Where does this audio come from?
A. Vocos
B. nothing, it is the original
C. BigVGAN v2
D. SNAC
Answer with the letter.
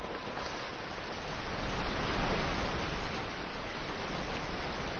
B